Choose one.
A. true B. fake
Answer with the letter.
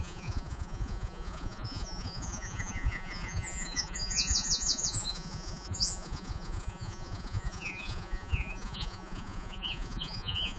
B